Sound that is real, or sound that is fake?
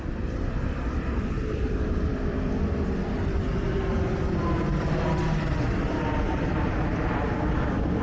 fake